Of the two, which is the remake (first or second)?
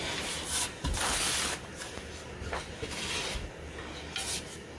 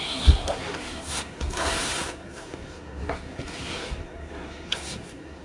second